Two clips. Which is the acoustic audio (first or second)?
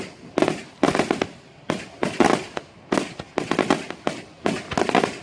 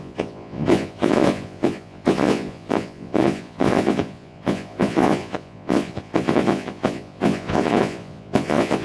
first